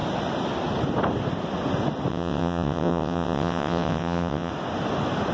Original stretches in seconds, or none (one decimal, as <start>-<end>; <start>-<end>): 0.0-2.1; 4.5-5.3